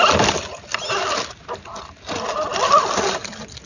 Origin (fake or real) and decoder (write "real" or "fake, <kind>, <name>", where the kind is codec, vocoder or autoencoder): real